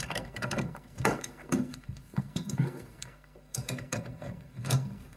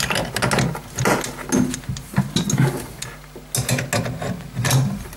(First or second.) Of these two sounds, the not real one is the first